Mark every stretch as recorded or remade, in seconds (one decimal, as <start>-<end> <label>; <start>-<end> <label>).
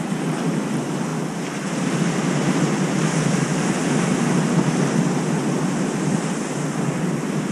0.0-7.5 recorded